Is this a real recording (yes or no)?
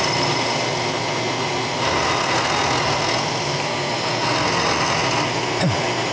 yes